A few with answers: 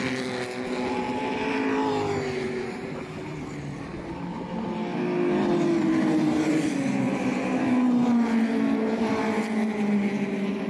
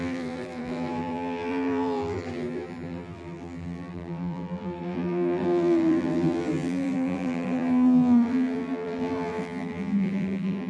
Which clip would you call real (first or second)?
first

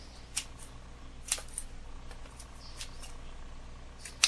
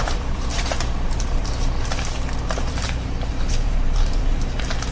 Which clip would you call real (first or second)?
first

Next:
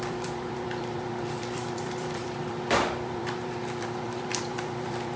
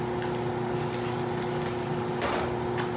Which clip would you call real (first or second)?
second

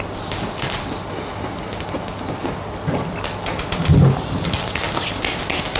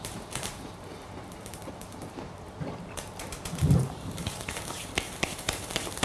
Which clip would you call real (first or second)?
first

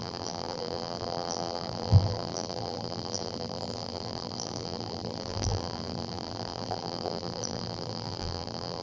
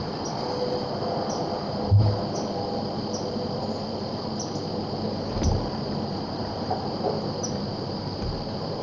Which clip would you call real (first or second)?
second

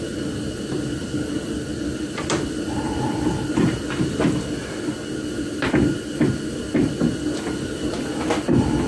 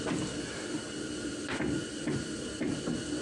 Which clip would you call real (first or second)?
first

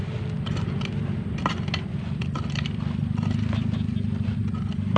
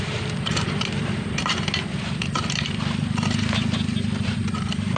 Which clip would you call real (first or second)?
first